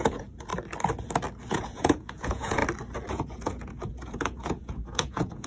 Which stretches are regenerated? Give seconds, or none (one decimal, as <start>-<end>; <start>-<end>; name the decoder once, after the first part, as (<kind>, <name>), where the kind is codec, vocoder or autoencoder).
0.0-0.5 (vocoder, Vocos); 1.5-2.6; 3.1-5.5